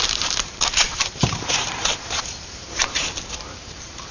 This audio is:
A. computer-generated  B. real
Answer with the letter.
A